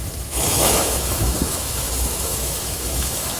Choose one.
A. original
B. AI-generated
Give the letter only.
B